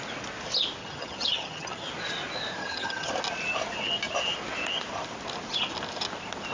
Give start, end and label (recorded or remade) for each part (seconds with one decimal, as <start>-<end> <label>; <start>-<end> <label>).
0.0-0.8 recorded; 0.8-1.9 remade; 1.9-2.6 recorded; 2.6-3.1 remade; 3.1-6.5 recorded